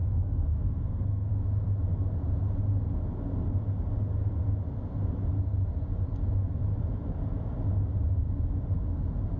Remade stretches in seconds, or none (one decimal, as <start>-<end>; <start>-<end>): 0.0-1.3